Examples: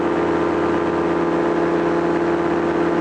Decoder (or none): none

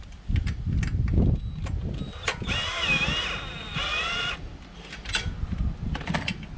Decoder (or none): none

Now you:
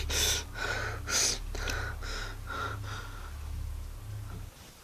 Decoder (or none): none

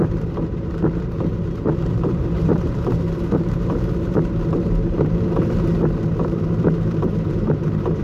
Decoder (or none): vocoder, BigVGAN v2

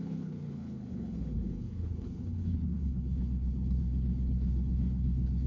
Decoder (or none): codec, HILCodec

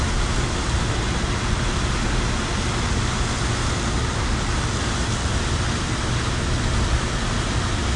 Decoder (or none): none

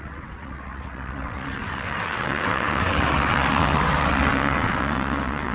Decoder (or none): vocoder, WaveNeXt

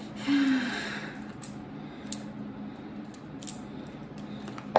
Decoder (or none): none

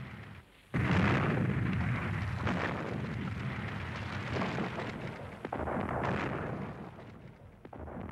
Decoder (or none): none